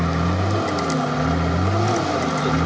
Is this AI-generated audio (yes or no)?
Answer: no